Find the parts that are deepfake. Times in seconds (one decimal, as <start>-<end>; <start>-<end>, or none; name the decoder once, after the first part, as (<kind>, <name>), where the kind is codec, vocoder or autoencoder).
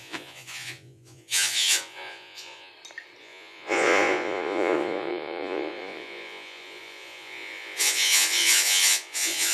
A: 0.0-2.7 (vocoder, Vocos); 3.2-9.5